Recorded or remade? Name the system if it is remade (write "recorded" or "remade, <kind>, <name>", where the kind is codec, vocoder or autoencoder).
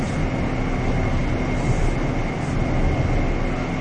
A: recorded